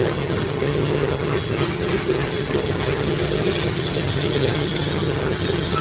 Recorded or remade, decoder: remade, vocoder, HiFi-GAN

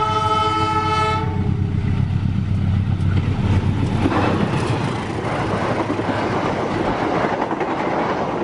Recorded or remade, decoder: recorded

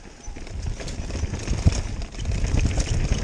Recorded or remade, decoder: recorded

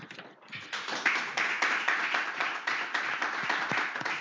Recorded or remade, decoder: remade, vocoder, BigVGAN v2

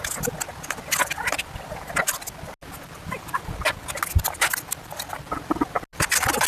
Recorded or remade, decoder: recorded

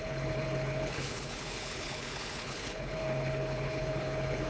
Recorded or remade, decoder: remade, codec, HILCodec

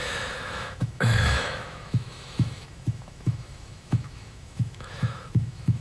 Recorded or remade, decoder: remade, autoencoder, DAC-VAE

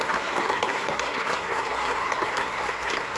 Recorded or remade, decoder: remade, codec, SNAC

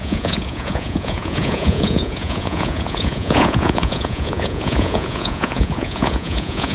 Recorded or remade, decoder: remade, vocoder, Vocos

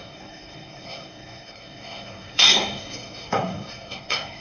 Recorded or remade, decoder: remade, codec, SNAC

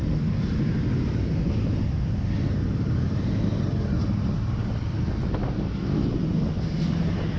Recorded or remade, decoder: recorded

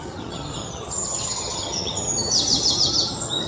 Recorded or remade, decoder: remade, vocoder, HiFi-GAN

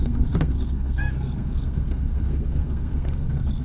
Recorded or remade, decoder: remade, codec, SNAC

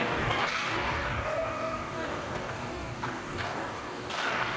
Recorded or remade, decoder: remade, codec, DAC